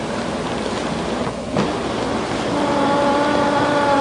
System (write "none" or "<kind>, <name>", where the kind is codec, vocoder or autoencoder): none